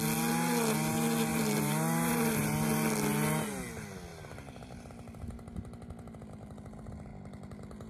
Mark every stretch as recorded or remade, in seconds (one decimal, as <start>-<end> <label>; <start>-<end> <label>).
0.0-1.3 recorded; 1.3-2.2 remade; 2.2-4.1 recorded; 4.1-4.8 remade; 4.8-7.9 recorded